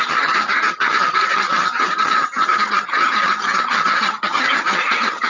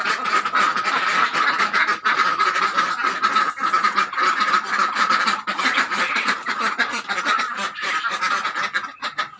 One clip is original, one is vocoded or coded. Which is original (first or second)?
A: second